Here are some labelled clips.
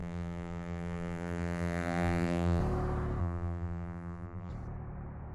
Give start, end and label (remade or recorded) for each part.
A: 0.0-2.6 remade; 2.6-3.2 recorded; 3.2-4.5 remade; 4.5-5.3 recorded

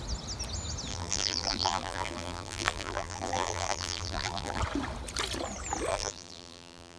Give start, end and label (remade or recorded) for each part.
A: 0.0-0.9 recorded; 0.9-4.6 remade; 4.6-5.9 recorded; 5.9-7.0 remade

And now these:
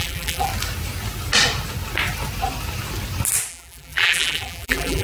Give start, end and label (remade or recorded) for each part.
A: 0.0-0.5 remade; 0.5-3.5 recorded; 3.5-5.0 remade